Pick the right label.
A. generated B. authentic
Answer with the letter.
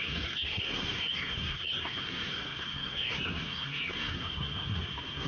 A